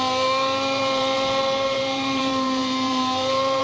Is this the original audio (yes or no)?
no